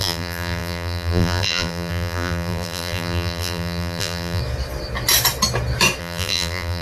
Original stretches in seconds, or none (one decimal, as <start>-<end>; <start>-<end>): 4.4-6.0